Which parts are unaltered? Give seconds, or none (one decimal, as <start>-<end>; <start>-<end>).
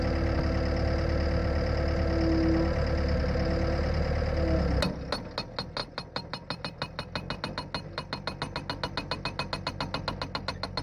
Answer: 0.0-10.8